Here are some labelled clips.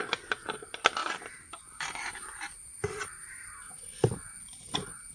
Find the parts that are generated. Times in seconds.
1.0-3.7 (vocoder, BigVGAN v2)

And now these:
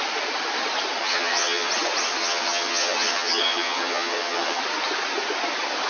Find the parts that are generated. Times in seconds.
1.0-1.7 (vocoder, HiFi-GAN); 2.2-4.6